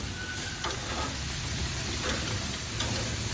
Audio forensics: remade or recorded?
recorded